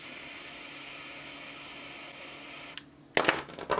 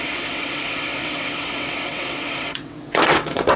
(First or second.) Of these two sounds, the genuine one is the first